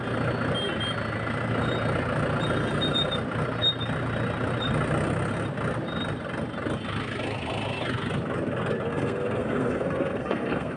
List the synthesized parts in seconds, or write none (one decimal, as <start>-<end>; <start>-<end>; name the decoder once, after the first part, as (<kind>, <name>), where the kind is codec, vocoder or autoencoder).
8.9-10.8 (codec, SNAC)